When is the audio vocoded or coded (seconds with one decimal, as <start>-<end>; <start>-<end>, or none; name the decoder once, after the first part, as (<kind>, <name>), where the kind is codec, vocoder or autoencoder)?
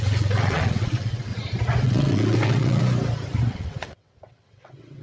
0.0-1.3 (vocoder, WaveNeXt); 1.8-2.8; 3.5-5.0